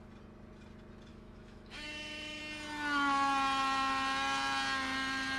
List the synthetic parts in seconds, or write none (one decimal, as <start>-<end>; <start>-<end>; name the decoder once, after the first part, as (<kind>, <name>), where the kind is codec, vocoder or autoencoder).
1.1-2.4 (autoencoder, DAC-VAE)